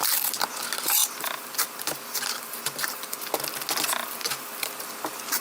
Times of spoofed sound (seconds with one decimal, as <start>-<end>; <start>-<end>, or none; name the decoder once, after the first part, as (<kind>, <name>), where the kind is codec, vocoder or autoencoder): 1.0-3.3 (vocoder, BigVGAN v2); 4.2-5.4